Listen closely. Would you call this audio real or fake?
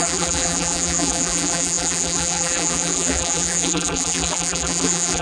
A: fake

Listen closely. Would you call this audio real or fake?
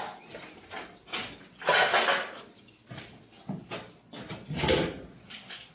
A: real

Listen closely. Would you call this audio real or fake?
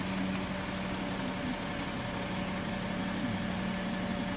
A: real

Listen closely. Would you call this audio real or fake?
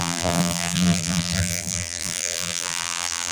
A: fake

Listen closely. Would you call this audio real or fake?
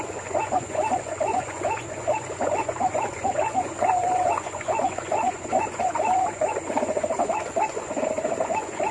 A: fake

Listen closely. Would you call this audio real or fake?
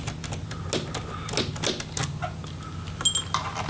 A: real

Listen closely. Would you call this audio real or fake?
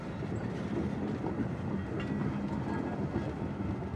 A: real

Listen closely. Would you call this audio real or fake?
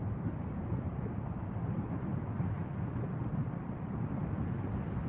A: real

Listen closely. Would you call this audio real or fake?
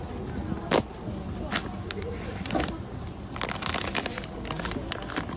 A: real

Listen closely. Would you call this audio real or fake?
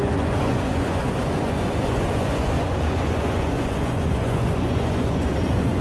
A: fake